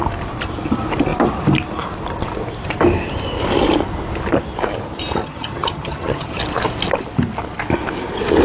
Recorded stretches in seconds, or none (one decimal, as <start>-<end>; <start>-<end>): 0.0-5.2; 6.4-8.4